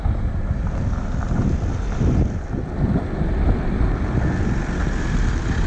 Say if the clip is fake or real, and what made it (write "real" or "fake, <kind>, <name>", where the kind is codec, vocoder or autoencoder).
real